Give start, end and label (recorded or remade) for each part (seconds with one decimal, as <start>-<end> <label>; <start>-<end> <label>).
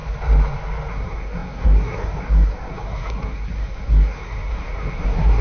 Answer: 0.0-0.9 recorded; 0.9-5.4 remade